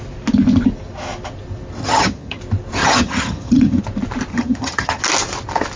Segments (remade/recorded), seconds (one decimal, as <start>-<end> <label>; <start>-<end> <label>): 0.0-1.8 recorded; 1.8-2.4 remade; 2.4-2.8 recorded; 2.8-3.8 remade; 3.8-4.3 recorded; 4.3-5.0 remade; 5.0-5.8 recorded